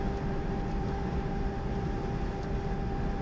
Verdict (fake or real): real